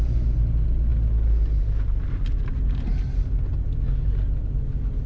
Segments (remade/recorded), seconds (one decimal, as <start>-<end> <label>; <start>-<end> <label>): 0.0-5.1 recorded